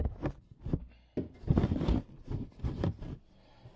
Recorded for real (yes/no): yes